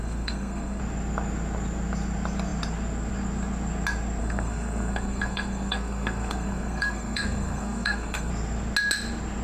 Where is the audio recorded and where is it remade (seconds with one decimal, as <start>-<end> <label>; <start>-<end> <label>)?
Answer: 0.0-0.8 remade; 0.8-4.2 recorded; 4.2-8.3 remade; 8.3-9.4 recorded